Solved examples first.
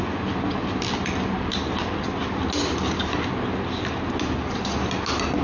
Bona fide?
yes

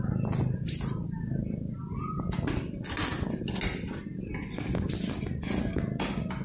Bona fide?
yes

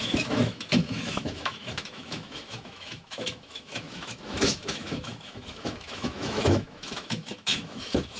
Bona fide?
no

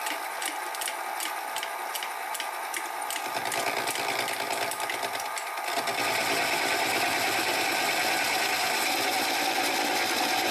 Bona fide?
yes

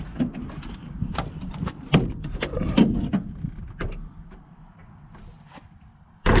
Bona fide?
yes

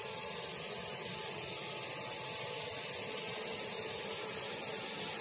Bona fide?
yes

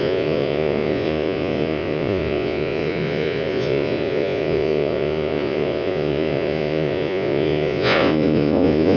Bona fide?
no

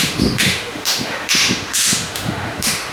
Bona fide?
no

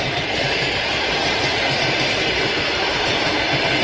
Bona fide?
yes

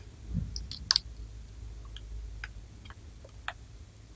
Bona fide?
yes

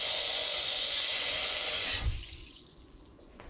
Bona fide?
no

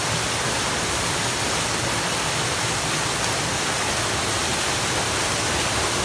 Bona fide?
yes